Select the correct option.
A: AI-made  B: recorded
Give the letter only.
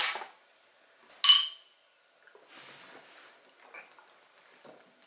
B